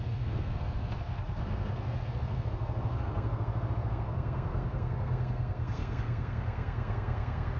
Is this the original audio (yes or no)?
no